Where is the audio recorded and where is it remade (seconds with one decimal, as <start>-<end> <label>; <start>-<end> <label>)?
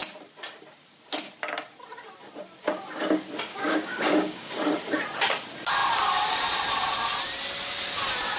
0.0-3.5 recorded; 3.5-4.6 remade; 4.6-8.4 recorded